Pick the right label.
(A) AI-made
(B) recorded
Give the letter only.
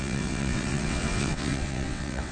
A